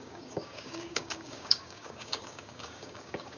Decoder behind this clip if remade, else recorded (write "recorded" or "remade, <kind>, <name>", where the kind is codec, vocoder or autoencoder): remade, codec, DAC